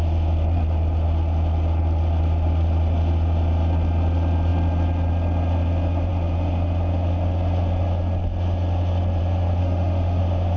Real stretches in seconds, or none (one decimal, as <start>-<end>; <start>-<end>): 0.0-9.6; 10.2-10.6